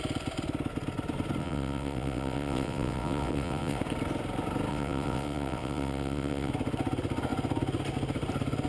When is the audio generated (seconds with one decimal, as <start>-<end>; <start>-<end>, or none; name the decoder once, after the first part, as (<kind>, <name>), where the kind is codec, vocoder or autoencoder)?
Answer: 1.4-3.8 (vocoder, WaveNeXt); 4.7-6.5